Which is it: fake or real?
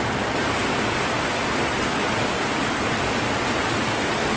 real